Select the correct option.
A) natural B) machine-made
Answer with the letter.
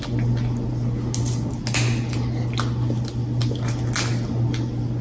A